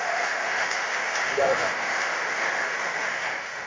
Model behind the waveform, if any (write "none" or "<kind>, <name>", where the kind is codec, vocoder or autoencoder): autoencoder, DAC-VAE